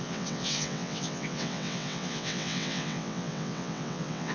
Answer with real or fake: fake